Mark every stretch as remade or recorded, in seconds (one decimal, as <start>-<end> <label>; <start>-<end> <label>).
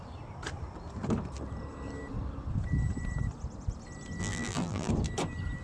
0.0-4.2 recorded; 4.2-4.9 remade; 4.9-5.6 recorded